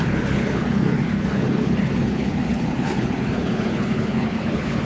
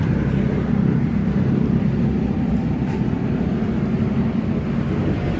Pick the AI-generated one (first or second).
first